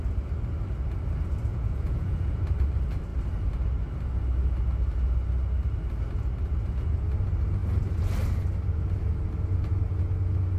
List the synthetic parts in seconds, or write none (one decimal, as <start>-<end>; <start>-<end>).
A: 1.5-2.4